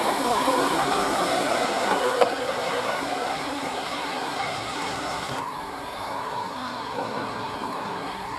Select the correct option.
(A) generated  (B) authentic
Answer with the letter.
A